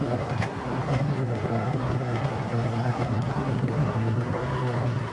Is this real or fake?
fake